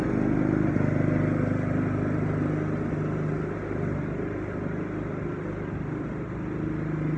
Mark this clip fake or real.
real